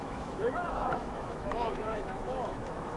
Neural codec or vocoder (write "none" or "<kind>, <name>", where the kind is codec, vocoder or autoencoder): autoencoder, DAC-VAE